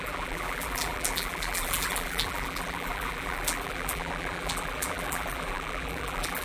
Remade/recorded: remade